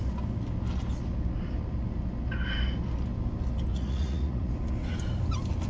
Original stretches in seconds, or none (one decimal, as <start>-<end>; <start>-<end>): 0.0-3.7; 4.5-5.7